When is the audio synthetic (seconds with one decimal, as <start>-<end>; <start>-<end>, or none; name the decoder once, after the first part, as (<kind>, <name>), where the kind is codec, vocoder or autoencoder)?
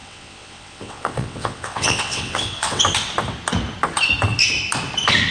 0.0-2.8 (vocoder, WaveNeXt)